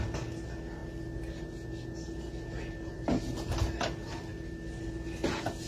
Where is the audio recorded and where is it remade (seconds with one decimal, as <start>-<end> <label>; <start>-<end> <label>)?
0.0-5.7 recorded